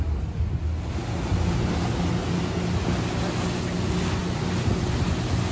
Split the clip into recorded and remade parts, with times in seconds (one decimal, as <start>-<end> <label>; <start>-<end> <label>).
0.0-5.5 recorded